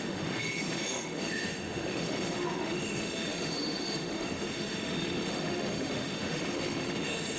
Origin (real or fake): fake